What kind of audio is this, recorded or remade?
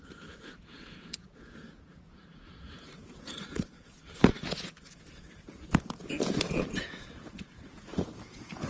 remade